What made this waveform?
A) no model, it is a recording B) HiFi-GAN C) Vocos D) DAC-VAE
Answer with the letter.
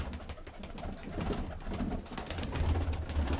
A